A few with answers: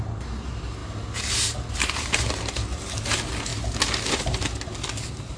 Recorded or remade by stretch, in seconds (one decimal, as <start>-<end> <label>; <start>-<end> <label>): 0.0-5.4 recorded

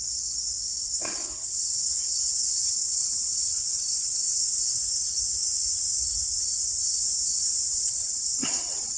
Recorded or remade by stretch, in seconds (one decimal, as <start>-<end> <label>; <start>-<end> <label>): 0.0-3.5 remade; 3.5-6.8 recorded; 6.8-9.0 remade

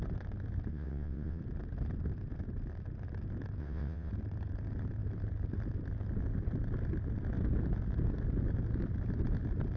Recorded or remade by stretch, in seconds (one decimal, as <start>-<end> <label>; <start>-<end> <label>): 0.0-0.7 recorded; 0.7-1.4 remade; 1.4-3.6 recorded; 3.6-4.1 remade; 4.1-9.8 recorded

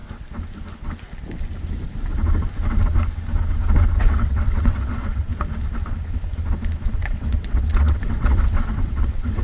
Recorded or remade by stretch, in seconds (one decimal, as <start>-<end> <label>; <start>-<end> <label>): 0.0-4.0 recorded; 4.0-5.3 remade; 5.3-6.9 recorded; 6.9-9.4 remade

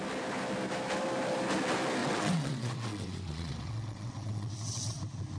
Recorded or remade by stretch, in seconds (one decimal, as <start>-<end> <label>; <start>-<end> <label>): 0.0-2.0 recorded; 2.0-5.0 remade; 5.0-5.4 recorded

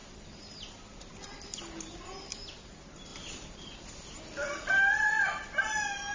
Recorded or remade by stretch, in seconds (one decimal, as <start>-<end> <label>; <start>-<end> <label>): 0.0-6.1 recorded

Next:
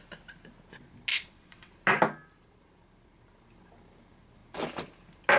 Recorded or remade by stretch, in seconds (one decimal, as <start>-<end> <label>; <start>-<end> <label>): 0.0-1.1 recorded; 1.1-1.7 remade; 1.7-5.4 recorded

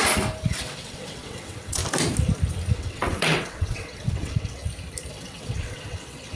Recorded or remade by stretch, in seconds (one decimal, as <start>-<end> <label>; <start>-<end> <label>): 0.0-0.5 recorded; 0.5-1.8 remade; 1.8-2.7 recorded; 2.7-4.6 remade; 4.6-5.1 recorded; 5.1-6.4 remade